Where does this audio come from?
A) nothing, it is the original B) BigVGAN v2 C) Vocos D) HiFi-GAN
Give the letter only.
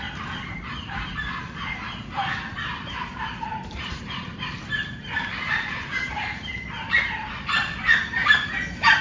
A